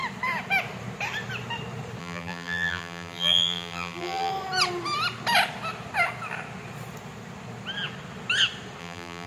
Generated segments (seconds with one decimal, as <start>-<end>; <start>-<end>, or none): 2.0-4.3; 8.8-9.3